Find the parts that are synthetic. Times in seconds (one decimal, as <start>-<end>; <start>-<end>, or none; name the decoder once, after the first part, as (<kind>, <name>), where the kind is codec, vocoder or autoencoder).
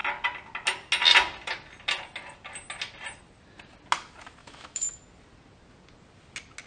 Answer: 4.4-5.0 (autoencoder, DAC-VAE)